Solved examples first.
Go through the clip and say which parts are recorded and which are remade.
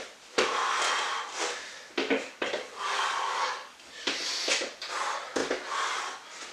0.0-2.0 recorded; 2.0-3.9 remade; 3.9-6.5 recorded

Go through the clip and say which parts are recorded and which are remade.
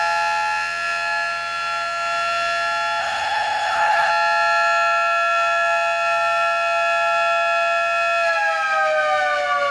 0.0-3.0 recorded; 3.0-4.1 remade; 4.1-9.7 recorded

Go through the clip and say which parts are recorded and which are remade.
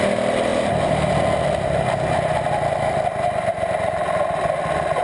0.0-5.0 recorded